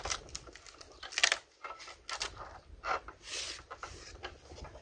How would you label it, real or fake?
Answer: real